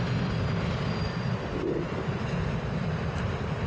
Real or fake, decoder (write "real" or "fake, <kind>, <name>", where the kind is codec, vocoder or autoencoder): real